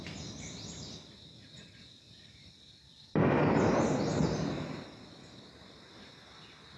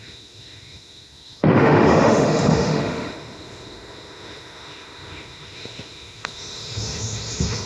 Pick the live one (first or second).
first